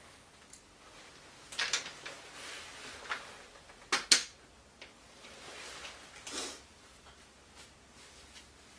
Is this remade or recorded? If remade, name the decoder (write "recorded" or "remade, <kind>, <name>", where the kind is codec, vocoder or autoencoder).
recorded